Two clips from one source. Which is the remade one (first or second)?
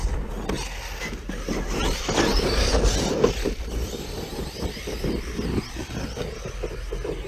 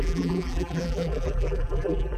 second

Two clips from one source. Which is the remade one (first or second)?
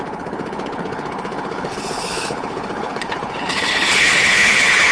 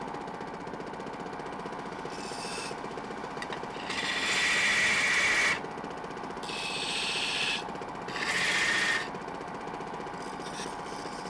first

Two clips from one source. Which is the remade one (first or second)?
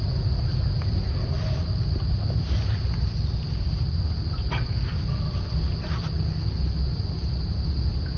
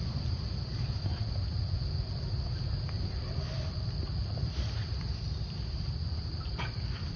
second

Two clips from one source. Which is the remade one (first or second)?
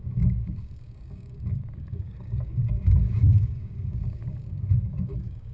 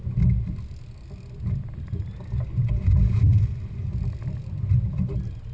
first